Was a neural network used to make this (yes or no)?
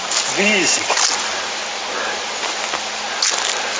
no